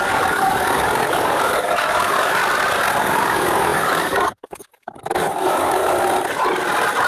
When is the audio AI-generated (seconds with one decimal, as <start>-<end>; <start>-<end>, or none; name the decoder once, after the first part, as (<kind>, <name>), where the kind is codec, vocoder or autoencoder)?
0.0-2.4 (codec, DAC); 3.0-5.8